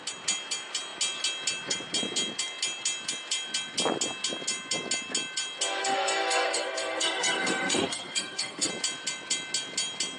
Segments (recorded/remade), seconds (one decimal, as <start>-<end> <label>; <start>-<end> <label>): 0.0-5.8 recorded; 5.8-8.7 remade; 8.7-10.2 recorded